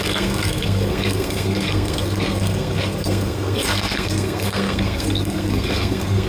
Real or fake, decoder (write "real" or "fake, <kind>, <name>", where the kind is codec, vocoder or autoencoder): fake, codec, SNAC